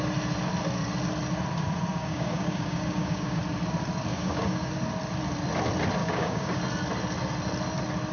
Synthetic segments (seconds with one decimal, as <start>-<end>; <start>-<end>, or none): 1.9-3.4; 4.1-4.7; 6.0-6.6